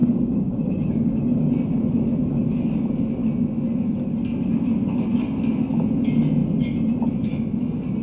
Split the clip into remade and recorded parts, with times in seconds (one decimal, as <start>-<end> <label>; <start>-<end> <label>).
0.0-1.5 remade; 1.5-8.0 recorded